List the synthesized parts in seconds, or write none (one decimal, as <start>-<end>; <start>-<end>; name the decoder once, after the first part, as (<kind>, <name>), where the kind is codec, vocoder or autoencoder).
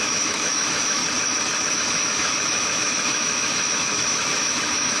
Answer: 0.0-1.0 (autoencoder, DAC-VAE); 1.7-5.0